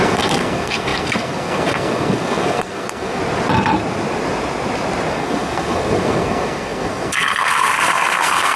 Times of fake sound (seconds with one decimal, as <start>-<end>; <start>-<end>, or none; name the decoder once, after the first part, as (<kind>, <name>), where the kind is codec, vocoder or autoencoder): 0.0-3.2 (codec, SNAC); 5.1-8.6